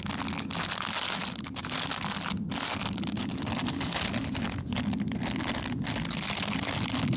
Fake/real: real